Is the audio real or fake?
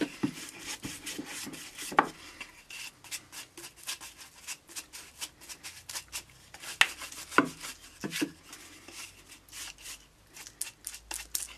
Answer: real